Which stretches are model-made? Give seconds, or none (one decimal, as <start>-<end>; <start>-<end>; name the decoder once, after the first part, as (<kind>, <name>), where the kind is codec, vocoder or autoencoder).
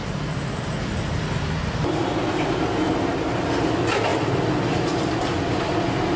none